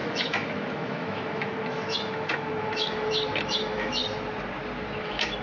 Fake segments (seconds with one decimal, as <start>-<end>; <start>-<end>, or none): 0.0-4.0; 5.0-5.4